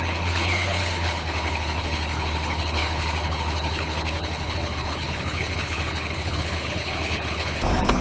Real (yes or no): no